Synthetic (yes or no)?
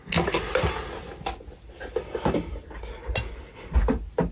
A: no